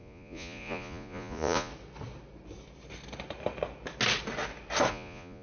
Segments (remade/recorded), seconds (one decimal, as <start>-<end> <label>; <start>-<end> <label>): 0.0-1.7 remade; 1.7-4.9 recorded; 4.9-5.4 remade

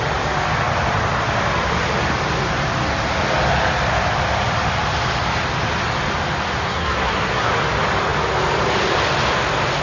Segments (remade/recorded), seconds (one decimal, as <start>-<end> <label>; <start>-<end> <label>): 0.0-6.7 recorded; 6.7-7.5 remade; 7.5-9.8 recorded